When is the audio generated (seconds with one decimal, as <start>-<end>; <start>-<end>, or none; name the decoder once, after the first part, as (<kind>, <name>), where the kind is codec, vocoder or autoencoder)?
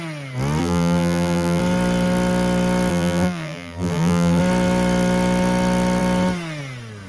0.6-1.6 (vocoder, BigVGAN v2); 2.9-4.4